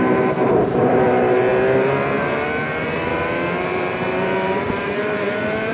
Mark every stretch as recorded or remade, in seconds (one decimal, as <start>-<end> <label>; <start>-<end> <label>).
0.0-5.7 remade